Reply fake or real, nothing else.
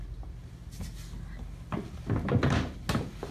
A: real